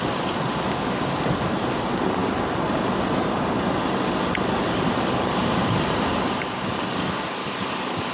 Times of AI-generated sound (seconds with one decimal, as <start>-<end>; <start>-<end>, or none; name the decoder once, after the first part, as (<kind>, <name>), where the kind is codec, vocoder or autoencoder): none